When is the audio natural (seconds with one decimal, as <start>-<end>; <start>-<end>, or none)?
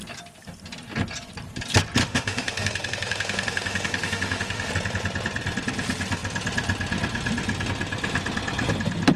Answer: 0.0-2.0; 4.7-9.2